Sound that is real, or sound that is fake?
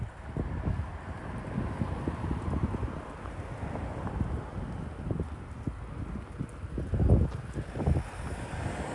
real